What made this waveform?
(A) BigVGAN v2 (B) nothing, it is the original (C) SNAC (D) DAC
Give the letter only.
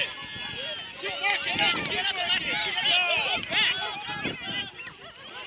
B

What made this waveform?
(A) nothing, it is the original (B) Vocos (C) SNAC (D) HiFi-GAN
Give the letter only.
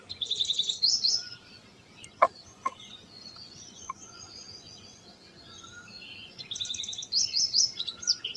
B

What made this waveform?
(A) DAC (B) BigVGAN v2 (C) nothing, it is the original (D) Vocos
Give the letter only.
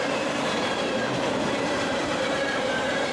B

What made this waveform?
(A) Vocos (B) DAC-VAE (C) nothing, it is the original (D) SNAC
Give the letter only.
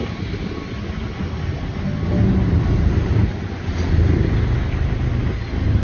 C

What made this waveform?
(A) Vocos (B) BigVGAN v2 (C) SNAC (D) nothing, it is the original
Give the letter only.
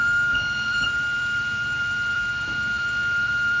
B